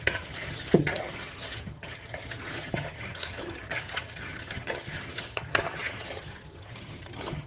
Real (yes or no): no